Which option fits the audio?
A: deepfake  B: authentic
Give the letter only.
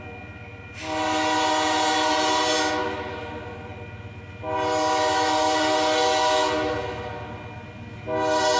B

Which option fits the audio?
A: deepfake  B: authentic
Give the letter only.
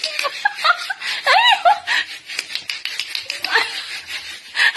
B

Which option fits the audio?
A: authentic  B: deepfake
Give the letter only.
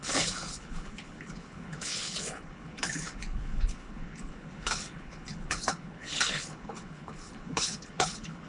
B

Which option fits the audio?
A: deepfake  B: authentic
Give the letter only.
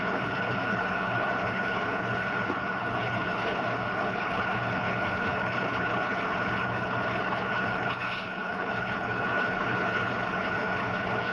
A